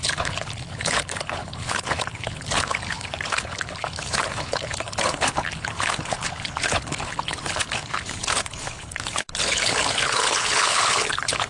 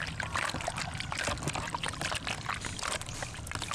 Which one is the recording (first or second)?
second